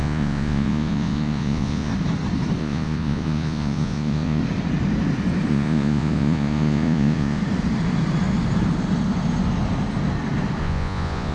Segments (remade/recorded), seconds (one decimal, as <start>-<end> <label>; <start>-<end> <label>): 0.0-1.9 remade; 1.9-2.6 recorded; 2.6-4.4 remade; 4.4-5.5 recorded; 5.5-7.4 remade; 7.4-10.6 recorded; 10.6-11.3 remade

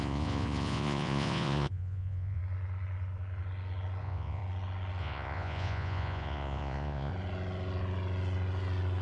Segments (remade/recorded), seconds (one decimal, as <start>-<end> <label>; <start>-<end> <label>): 0.0-2.4 remade; 2.4-4.0 recorded; 4.0-4.4 remade; 4.4-5.0 recorded; 5.0-7.1 remade; 7.1-9.0 recorded